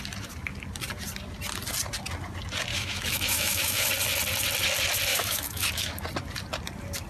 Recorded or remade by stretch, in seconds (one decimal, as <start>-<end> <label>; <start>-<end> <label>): 0.0-2.7 recorded; 2.7-3.9 remade; 3.9-5.1 recorded; 5.1-5.9 remade; 5.9-7.1 recorded